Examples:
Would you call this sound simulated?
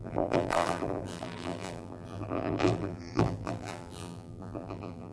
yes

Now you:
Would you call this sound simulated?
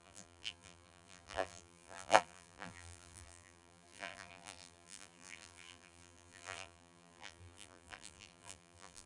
yes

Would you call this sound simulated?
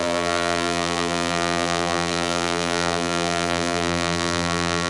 yes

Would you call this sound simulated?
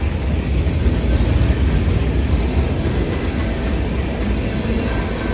no